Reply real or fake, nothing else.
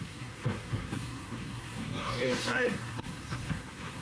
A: fake